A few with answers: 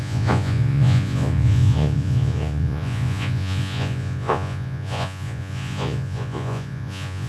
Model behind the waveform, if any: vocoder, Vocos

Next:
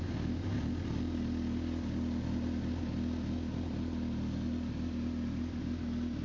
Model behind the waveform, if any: none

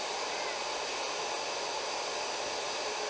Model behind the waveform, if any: none